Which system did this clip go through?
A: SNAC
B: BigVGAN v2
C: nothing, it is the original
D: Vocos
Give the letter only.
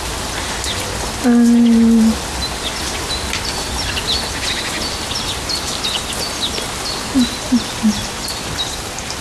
C